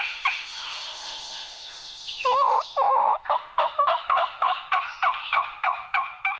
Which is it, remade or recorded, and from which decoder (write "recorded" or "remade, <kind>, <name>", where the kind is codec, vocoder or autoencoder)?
remade, autoencoder, DAC-VAE